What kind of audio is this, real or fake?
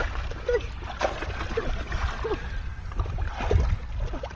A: real